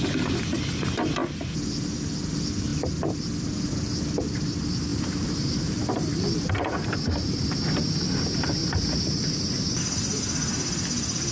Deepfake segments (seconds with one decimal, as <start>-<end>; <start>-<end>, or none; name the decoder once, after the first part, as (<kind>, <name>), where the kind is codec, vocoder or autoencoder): 4.9-6.5 (vocoder, BigVGAN v2); 8.6-9.8